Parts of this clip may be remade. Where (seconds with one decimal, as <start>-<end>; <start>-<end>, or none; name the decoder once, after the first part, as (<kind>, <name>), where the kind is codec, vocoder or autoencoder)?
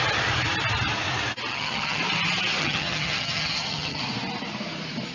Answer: 1.5-2.0 (vocoder, HiFi-GAN); 2.6-4.0